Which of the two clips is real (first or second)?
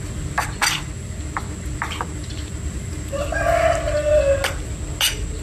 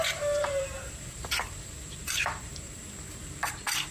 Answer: first